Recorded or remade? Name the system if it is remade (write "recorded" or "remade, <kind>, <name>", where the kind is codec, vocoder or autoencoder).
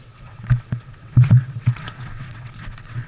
remade, vocoder, WaveNeXt